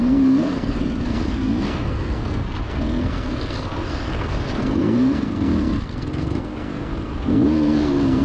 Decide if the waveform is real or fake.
fake